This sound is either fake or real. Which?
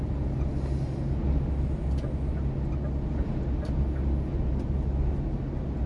real